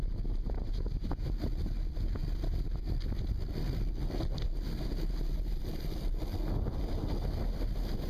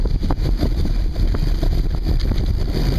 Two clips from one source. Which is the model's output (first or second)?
second